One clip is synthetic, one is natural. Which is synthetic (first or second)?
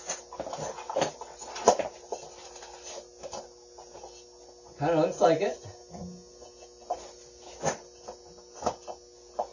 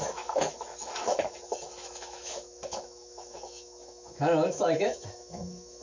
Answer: second